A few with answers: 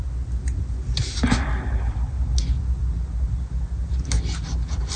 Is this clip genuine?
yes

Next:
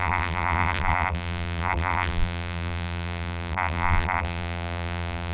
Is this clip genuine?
no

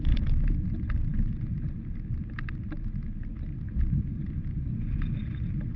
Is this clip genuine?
no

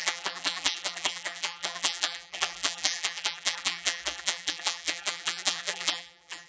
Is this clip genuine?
no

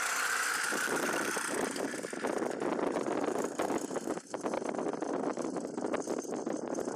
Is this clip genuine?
yes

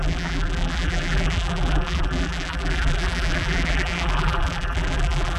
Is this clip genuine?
no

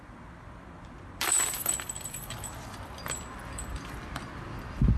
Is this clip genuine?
no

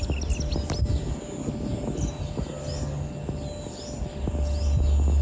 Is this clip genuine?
yes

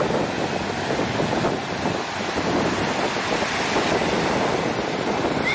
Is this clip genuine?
yes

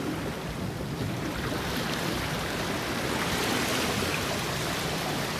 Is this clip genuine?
yes